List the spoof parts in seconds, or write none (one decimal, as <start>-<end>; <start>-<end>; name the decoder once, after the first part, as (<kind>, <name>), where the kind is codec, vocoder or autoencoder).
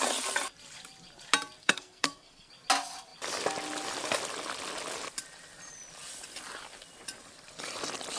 1.6-2.5 (codec, SNAC)